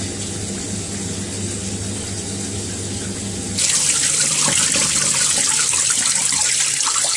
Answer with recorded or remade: recorded